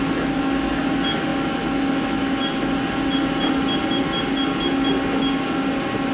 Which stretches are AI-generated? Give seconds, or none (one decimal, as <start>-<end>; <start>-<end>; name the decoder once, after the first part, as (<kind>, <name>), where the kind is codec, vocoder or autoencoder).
none